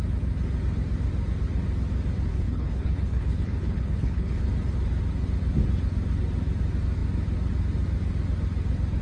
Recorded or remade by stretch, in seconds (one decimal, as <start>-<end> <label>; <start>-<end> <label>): 0.0-2.3 recorded; 2.3-4.5 remade; 4.5-9.0 recorded